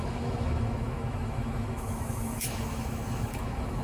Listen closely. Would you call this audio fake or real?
fake